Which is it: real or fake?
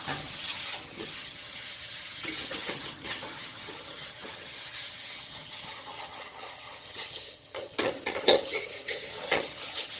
fake